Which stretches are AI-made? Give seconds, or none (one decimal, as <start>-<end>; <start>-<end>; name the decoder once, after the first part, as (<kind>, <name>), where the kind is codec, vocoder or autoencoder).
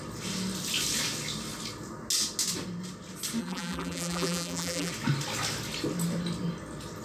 3.4-4.9 (vocoder, BigVGAN v2)